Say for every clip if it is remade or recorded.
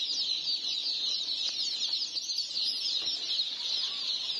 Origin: recorded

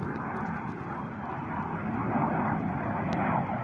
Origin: recorded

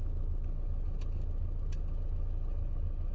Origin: recorded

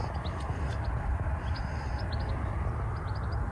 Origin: recorded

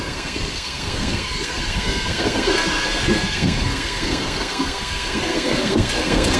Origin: remade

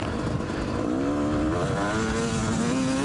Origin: recorded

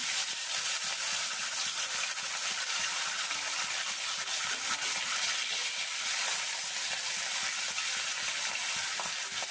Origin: recorded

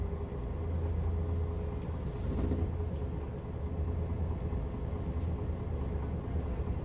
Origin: recorded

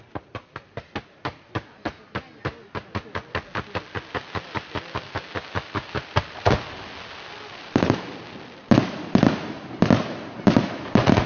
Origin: recorded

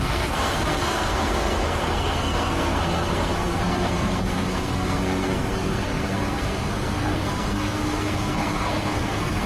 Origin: remade